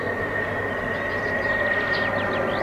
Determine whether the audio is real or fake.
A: real